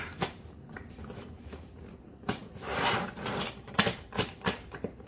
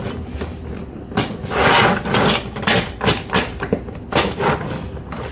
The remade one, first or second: first